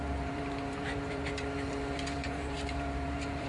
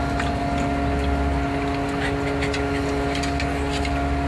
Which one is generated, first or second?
first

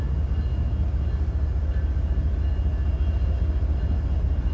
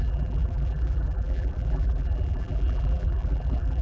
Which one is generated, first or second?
second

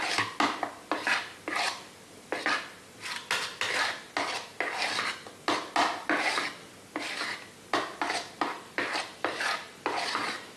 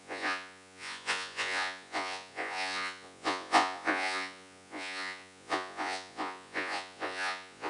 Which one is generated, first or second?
second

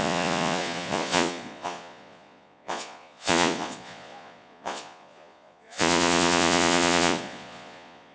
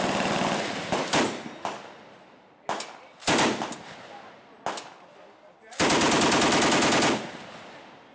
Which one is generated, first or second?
first